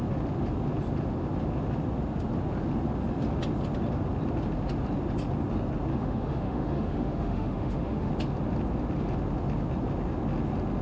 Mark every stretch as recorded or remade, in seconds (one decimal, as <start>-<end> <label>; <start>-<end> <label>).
0.0-5.9 recorded; 5.9-8.1 remade; 8.1-10.8 recorded